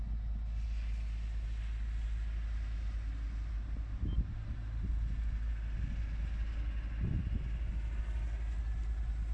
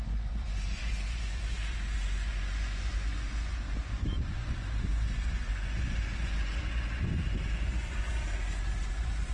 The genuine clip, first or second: first